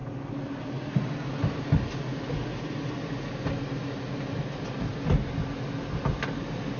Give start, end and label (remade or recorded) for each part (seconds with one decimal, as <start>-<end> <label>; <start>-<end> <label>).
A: 0.0-6.8 recorded